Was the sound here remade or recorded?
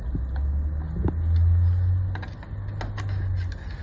recorded